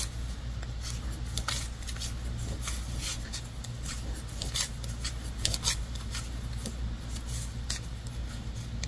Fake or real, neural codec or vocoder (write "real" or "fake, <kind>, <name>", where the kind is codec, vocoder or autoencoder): real